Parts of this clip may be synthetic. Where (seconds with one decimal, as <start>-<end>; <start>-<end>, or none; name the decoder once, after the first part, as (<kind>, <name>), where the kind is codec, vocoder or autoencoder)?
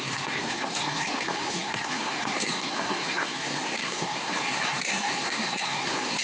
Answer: 0.0-6.2 (codec, SNAC)